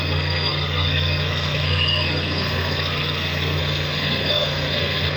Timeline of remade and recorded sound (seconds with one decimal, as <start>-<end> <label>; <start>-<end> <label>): 0.0-5.2 remade